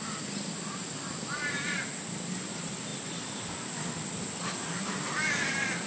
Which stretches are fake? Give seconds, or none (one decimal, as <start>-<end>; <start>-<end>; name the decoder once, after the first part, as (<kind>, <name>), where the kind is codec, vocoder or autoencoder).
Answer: none